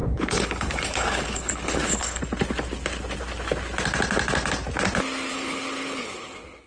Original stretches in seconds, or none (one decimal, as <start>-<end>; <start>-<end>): 2.2-5.3